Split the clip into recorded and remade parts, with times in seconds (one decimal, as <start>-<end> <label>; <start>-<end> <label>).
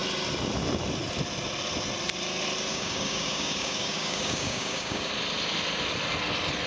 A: 0.0-2.7 recorded; 2.7-5.1 remade; 5.1-6.7 recorded